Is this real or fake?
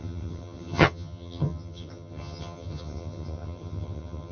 fake